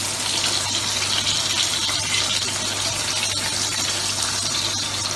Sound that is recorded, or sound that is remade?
recorded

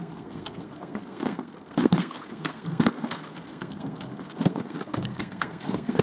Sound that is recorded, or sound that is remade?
remade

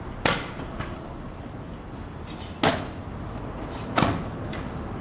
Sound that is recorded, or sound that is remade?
recorded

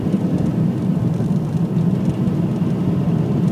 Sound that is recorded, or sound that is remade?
recorded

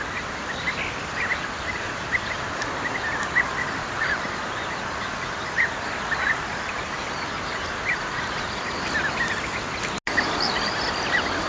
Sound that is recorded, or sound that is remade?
recorded